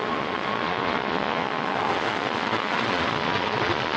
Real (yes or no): no